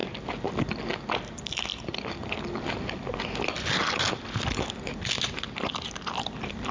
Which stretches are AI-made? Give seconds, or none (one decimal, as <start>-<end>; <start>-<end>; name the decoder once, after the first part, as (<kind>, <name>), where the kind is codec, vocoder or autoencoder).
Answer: none